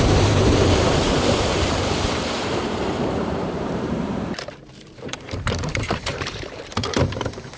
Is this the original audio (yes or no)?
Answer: no